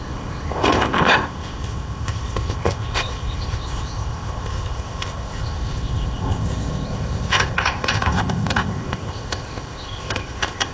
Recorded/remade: remade